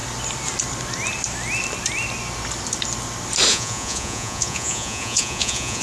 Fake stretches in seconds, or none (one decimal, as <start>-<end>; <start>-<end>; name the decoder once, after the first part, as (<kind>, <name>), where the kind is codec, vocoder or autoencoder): 3.5-5.8 (vocoder, Vocos)